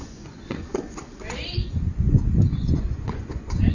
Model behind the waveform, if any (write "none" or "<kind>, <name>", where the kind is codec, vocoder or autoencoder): vocoder, Vocos